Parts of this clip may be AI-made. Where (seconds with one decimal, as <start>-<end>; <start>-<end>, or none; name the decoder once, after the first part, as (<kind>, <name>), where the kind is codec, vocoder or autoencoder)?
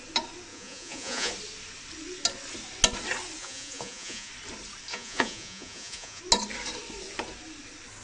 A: 0.5-1.3 (vocoder, Vocos); 3.4-4.3; 4.9-6.2